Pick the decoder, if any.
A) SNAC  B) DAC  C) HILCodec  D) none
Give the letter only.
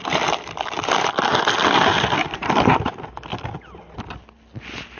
D